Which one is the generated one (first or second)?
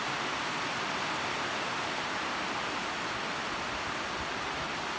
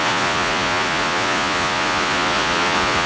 second